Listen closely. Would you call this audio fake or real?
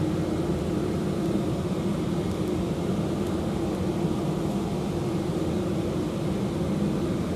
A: real